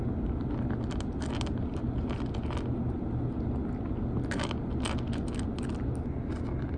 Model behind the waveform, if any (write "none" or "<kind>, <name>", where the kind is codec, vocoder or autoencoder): none